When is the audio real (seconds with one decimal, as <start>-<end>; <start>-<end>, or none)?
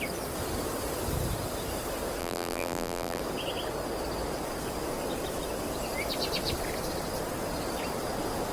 0.0-2.2; 3.2-8.5